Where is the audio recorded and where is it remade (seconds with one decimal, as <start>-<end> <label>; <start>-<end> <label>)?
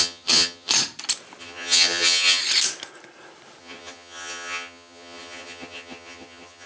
0.0-0.7 remade; 0.7-1.4 recorded; 1.4-2.4 remade; 2.4-3.6 recorded; 3.6-6.7 remade